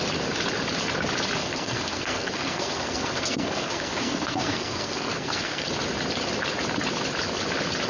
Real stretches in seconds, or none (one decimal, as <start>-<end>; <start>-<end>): 0.0-1.4; 5.7-7.9